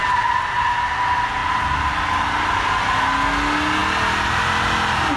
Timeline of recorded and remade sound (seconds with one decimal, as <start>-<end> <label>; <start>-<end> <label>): 0.0-5.2 recorded